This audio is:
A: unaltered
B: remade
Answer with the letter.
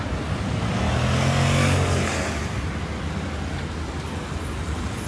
A